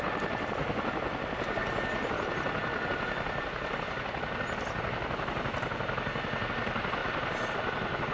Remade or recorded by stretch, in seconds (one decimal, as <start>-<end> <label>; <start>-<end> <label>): 0.0-1.6 remade; 1.6-6.5 recorded; 6.5-8.1 remade

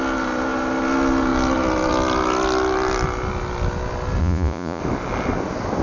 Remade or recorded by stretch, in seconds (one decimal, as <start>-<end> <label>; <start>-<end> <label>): 0.0-4.2 recorded; 4.2-4.8 remade; 4.8-5.8 recorded

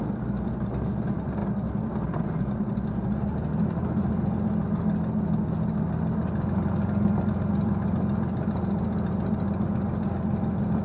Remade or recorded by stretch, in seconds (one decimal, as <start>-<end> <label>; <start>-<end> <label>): 0.0-10.8 recorded

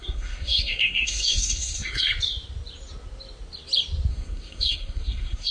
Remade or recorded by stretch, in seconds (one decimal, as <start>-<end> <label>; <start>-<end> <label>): 0.0-2.1 remade; 2.1-4.1 recorded; 4.1-5.5 remade

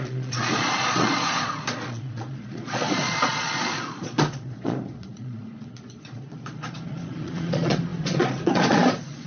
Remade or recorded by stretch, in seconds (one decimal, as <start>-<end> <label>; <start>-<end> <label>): 0.0-9.3 remade